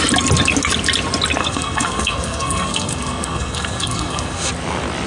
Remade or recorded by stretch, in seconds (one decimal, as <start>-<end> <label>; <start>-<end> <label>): 0.0-1.4 recorded; 1.4-4.5 remade; 4.5-5.1 recorded